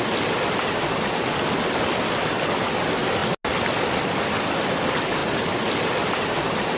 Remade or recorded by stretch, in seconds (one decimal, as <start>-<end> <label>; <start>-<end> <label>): 0.0-6.8 recorded